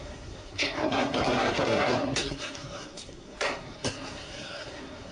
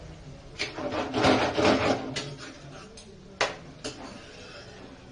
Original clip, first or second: second